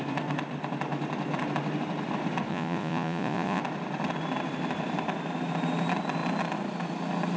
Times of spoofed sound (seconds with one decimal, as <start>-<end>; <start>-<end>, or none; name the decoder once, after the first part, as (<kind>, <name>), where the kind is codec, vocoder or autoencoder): 2.5-3.6 (vocoder, Vocos)